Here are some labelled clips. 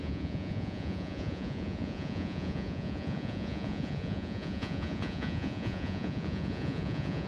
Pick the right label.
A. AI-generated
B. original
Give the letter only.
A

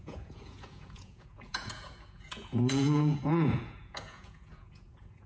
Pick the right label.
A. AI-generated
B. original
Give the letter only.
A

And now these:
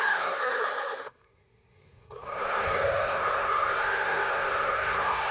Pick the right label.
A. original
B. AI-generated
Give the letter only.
B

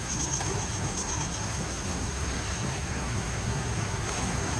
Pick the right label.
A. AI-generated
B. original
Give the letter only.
A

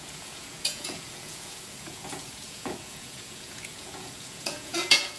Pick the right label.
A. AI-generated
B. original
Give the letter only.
A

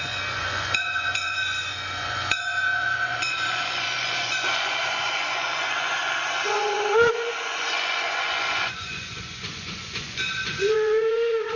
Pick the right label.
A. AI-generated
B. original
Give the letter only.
A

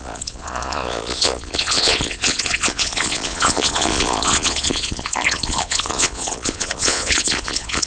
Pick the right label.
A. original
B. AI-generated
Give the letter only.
B